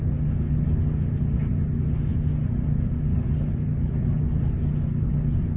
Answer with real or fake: real